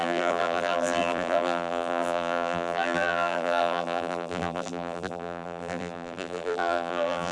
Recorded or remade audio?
remade